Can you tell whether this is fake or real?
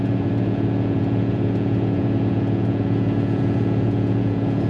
fake